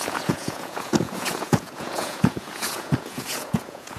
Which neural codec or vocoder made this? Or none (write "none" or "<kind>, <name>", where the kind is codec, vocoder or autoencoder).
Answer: vocoder, Vocos